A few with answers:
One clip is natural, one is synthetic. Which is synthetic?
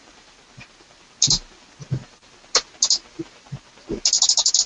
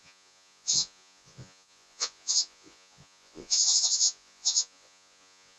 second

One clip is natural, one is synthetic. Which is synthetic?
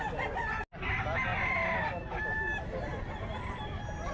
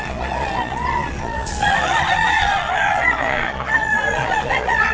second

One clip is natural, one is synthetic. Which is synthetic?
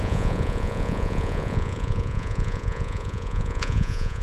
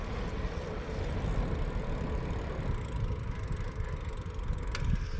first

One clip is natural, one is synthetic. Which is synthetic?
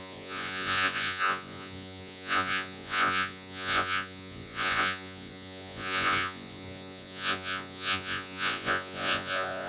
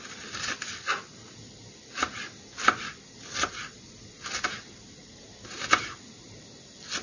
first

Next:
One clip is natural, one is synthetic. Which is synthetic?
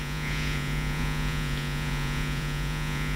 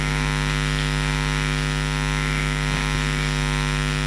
first